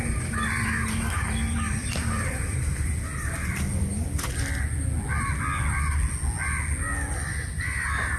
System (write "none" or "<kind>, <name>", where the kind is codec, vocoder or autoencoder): none